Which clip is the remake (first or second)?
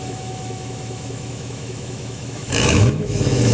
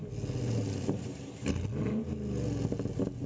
first